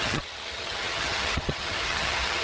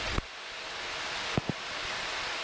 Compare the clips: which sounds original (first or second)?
second